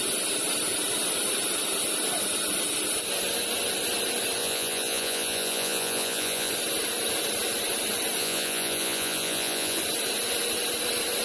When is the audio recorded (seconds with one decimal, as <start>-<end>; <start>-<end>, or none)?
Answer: 0.0-4.4; 6.5-8.2; 9.8-11.2